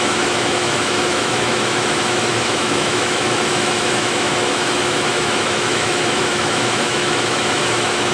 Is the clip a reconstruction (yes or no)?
yes